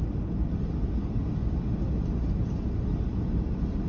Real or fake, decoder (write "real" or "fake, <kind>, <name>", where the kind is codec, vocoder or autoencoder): real